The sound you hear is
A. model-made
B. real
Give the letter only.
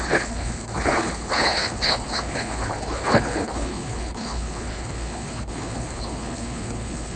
A